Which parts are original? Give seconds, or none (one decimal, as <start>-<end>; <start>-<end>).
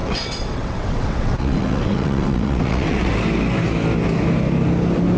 3.1-5.2